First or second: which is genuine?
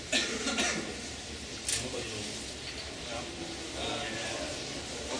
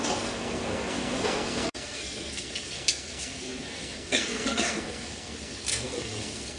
first